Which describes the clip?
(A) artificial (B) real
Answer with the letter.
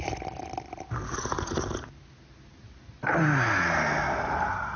B